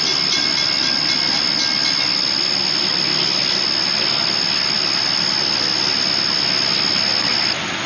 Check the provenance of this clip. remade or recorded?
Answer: recorded